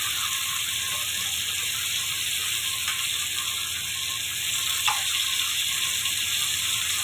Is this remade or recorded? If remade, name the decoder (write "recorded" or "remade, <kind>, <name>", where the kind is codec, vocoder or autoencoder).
recorded